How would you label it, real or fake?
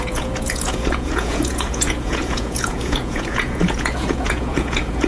fake